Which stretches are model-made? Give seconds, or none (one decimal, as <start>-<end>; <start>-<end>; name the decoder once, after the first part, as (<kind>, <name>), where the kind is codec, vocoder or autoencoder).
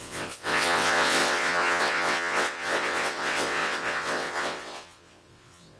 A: 0.0-5.8 (vocoder, WaveNeXt)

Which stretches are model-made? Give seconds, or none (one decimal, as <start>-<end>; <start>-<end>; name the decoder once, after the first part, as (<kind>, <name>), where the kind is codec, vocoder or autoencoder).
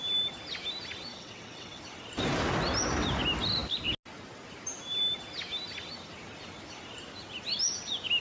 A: 1.1-1.8 (vocoder, WaveNeXt)